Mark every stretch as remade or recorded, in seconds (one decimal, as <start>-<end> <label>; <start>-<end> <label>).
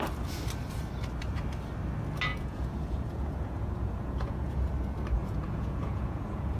0.0-2.3 recorded; 2.3-4.7 remade; 4.7-5.2 recorded; 5.2-6.6 remade